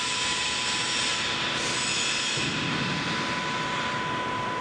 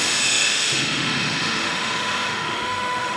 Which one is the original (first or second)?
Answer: first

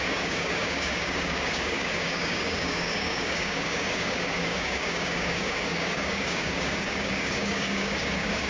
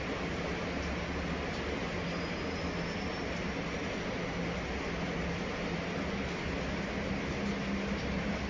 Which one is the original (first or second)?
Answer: second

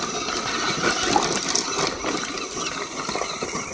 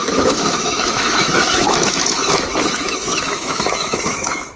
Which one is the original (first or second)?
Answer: first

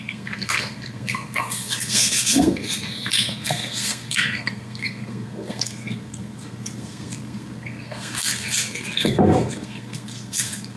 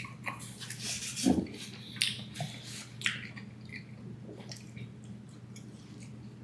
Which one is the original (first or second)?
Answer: second